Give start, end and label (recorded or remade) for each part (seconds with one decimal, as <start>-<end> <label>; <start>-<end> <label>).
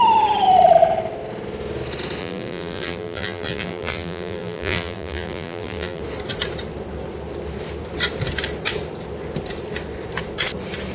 0.0-2.2 recorded; 2.2-6.0 remade; 6.0-10.9 recorded